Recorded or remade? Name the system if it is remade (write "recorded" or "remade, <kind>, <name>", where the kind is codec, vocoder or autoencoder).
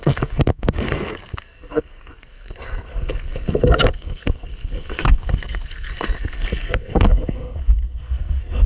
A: remade, codec, SNAC